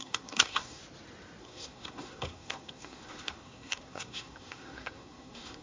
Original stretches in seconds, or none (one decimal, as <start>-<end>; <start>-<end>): 0.8-1.4